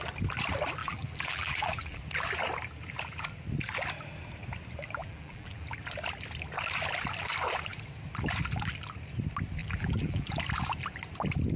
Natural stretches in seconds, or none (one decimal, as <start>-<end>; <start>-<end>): 0.0-0.8; 2.0-5.0; 5.7-9.6; 10.3-11.6